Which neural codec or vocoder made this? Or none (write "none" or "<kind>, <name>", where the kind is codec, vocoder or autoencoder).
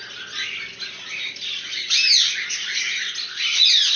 none